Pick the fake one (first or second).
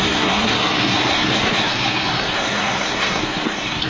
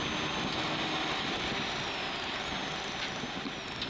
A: first